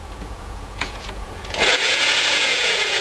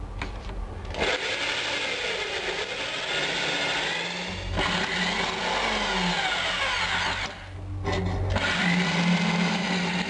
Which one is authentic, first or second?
second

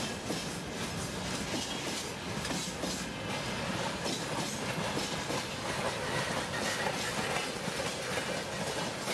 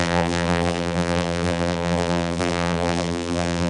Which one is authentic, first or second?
first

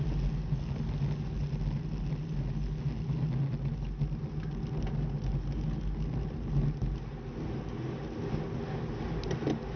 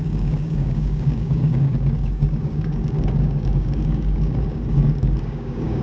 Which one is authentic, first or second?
first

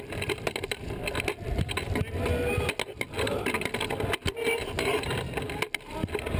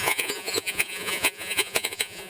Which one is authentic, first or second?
first